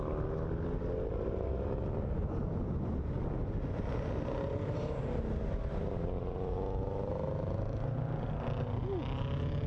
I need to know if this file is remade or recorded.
recorded